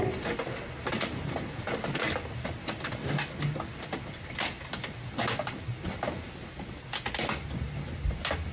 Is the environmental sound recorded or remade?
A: recorded